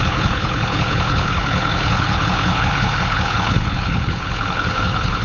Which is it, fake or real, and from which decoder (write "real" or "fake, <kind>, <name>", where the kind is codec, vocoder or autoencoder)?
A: fake, codec, HILCodec